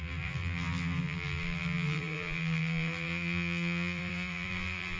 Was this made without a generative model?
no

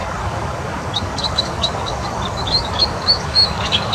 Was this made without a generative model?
no